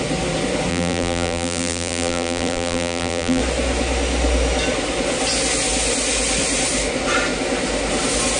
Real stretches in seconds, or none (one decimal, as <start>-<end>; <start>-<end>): 0.0-0.7; 3.4-8.4